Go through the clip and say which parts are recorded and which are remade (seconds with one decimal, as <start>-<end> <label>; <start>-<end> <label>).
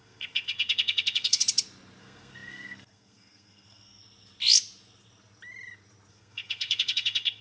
0.0-1.4 remade; 1.4-2.0 recorded; 2.0-4.0 remade; 4.0-6.1 recorded; 6.1-7.4 remade